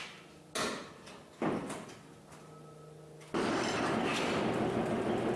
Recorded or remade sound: recorded